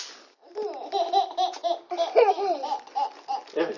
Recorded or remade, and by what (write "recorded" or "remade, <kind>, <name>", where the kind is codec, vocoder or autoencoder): recorded